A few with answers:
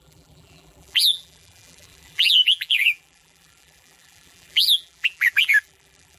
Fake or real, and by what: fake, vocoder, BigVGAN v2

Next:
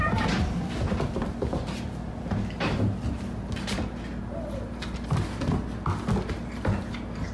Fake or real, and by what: real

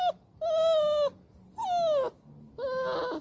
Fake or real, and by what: real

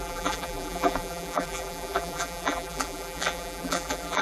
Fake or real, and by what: fake, vocoder, BigVGAN v2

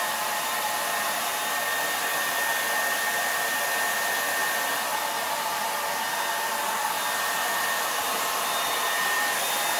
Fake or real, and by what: real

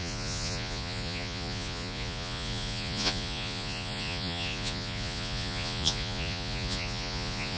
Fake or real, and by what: fake, vocoder, Vocos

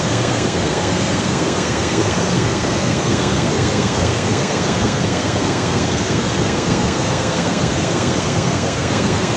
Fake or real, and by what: fake, codec, SNAC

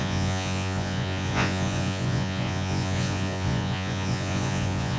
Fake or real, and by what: fake, vocoder, Vocos